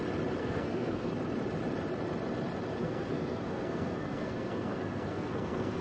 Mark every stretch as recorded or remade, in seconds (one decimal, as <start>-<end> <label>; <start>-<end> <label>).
0.0-0.4 recorded; 0.4-1.1 remade; 1.1-2.8 recorded; 2.8-5.8 remade